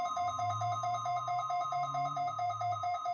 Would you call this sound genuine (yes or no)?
no